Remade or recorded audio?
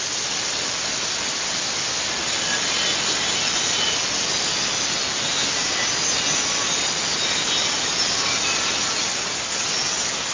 recorded